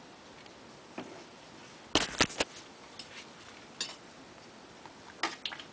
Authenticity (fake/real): real